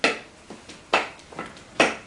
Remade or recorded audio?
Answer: recorded